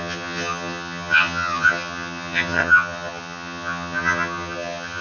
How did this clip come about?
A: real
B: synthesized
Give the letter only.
B